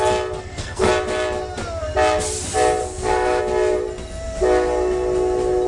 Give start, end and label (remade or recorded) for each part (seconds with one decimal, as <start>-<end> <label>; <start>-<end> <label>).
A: 0.0-0.4 recorded; 0.4-0.9 remade; 0.9-2.8 recorded; 2.8-3.4 remade; 3.4-5.7 recorded